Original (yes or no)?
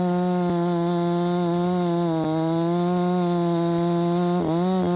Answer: yes